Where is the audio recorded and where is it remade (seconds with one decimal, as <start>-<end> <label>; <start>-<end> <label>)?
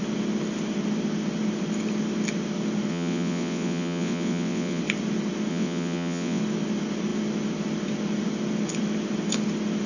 0.0-2.9 recorded; 2.9-4.8 remade; 4.8-5.5 recorded; 5.5-6.4 remade; 6.4-9.9 recorded